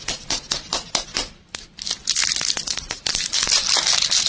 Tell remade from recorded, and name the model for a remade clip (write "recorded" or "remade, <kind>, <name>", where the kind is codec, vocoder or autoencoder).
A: recorded